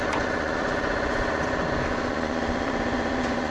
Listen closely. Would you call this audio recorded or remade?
remade